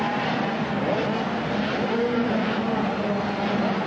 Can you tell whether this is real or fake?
real